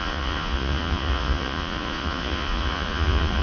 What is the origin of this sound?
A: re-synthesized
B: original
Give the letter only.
A